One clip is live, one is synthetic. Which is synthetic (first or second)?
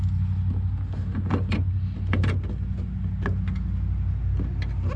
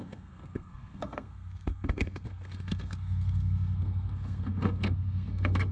second